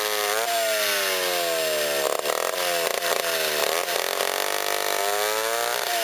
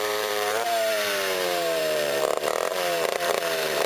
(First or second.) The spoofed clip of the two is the second